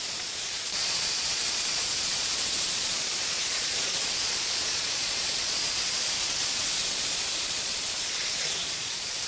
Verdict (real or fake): fake